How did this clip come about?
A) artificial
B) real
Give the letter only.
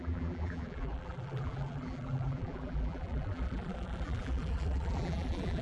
A